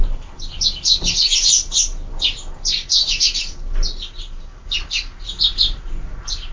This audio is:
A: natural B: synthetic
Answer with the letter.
A